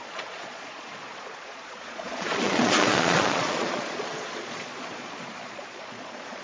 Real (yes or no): no